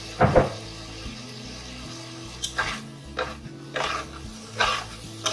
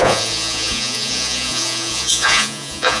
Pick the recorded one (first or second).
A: first